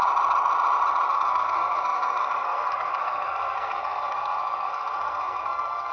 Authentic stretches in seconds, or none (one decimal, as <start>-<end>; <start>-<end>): 0.0-1.1